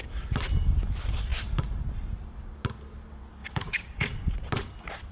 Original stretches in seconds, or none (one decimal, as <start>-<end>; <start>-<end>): 0.0-3.4; 4.3-5.1